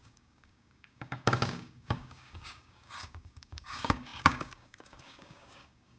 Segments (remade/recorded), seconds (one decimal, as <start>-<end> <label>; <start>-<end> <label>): 0.0-6.0 remade